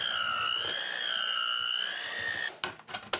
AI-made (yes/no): no